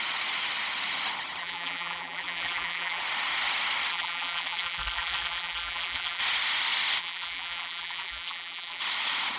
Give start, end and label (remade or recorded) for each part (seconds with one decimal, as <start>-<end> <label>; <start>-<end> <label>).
0.0-1.4 recorded; 1.4-3.0 remade; 3.0-3.9 recorded; 3.9-6.2 remade; 6.2-7.0 recorded; 7.0-8.8 remade; 8.8-9.4 recorded